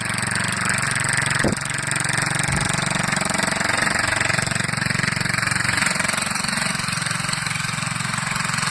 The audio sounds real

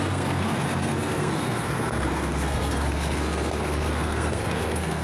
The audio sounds fake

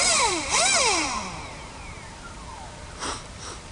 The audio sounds fake